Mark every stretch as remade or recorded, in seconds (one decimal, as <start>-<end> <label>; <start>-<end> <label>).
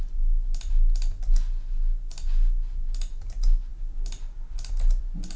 0.0-5.4 recorded